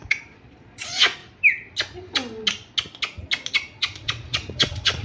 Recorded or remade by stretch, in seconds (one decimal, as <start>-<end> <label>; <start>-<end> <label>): 0.0-1.2 remade; 1.2-3.5 recorded; 3.5-5.0 remade